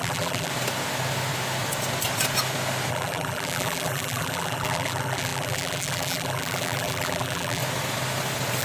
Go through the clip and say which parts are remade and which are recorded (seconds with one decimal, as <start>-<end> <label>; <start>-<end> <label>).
0.0-0.5 remade; 0.5-2.9 recorded; 2.9-7.6 remade; 7.6-8.6 recorded